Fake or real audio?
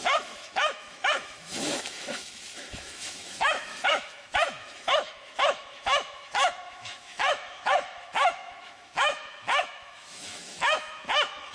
fake